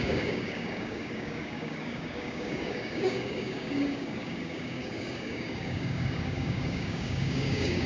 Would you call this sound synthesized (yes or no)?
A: yes